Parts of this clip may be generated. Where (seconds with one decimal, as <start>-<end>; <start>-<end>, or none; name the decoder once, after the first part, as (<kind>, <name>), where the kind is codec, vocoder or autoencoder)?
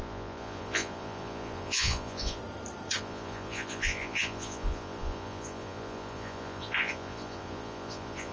0.0-2.4 (vocoder, Vocos); 3.0-8.3